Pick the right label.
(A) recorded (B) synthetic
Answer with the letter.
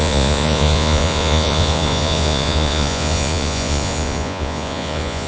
B